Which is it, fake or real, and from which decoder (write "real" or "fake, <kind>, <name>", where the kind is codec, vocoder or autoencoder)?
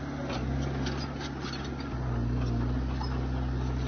real